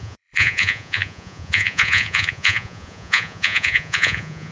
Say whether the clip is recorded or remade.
remade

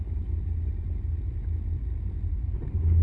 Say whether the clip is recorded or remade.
recorded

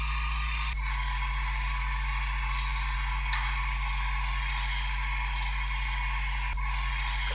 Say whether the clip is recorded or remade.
recorded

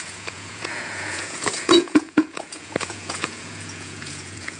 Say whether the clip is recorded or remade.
remade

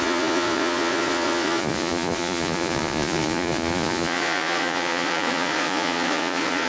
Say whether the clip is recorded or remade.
remade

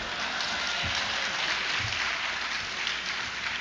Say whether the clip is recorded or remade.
recorded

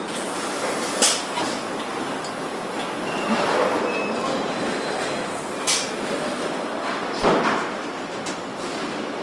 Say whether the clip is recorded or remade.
recorded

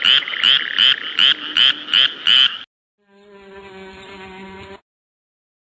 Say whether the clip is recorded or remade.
recorded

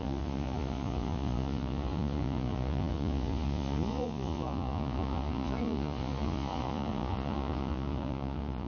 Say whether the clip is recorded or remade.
remade